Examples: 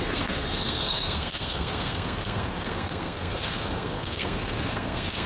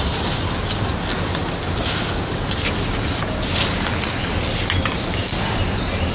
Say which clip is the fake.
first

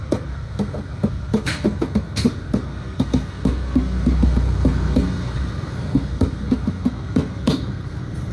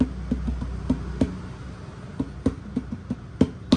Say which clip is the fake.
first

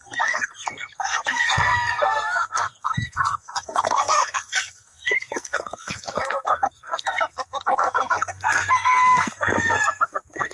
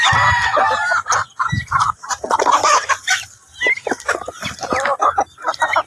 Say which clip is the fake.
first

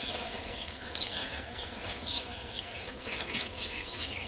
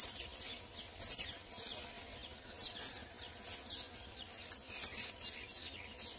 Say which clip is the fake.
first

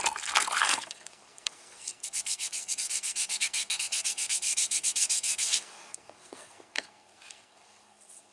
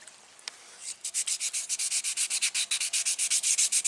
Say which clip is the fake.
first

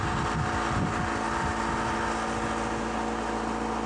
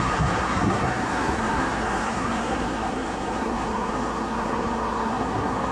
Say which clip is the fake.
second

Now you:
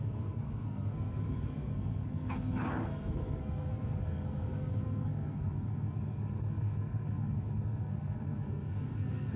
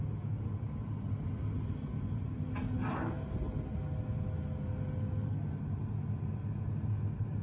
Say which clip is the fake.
first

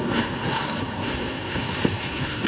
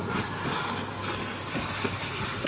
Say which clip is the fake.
first